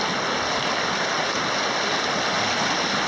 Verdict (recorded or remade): recorded